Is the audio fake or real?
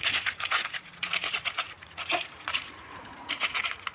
fake